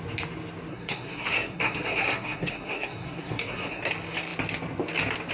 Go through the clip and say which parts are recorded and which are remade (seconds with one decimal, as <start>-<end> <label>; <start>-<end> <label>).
0.0-0.7 recorded; 0.7-3.9 remade; 3.9-5.3 recorded